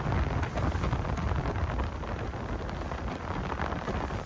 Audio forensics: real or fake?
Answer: real